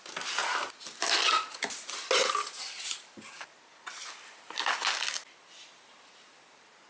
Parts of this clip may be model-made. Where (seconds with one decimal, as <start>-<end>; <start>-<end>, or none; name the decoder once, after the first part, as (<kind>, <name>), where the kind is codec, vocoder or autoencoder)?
none